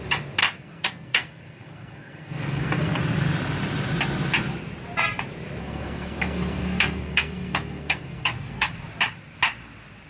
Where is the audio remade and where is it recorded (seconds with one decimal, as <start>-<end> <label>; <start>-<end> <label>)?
0.0-0.4 recorded; 0.4-3.0 remade; 3.0-5.6 recorded; 5.6-8.7 remade; 8.7-10.1 recorded